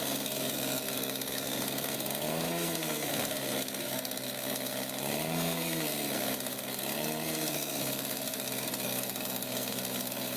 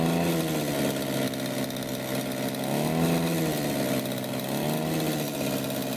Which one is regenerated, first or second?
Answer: first